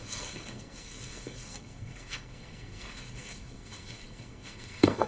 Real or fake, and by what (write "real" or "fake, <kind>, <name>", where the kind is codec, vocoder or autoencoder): fake, codec, SNAC